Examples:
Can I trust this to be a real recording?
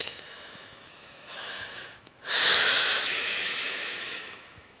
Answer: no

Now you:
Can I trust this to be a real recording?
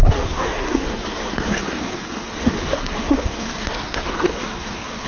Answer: no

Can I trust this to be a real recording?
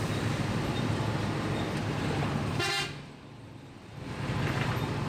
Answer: yes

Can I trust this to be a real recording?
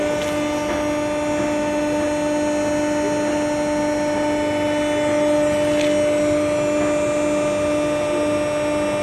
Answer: yes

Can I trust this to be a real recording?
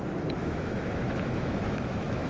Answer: no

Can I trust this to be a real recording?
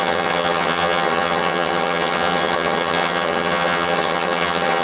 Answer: no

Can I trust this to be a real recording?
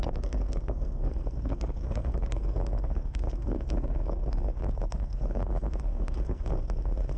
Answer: no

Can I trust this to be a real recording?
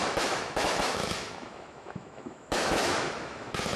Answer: no